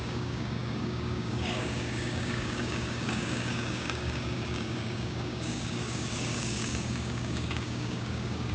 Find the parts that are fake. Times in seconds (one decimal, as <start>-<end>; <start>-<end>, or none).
0.0-8.5